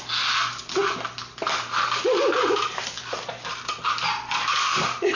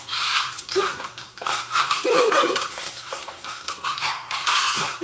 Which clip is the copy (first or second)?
second